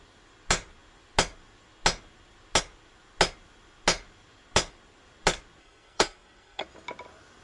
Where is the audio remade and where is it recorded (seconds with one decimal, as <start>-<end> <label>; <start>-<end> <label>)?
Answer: 0.0-5.6 recorded; 5.6-6.6 remade; 6.6-7.4 recorded